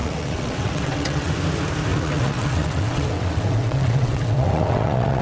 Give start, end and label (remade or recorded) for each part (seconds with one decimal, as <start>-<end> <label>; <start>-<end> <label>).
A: 0.0-1.3 remade; 1.3-1.9 recorded; 1.9-5.2 remade